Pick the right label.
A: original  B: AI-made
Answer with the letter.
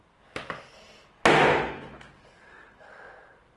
A